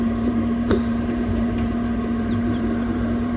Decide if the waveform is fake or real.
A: fake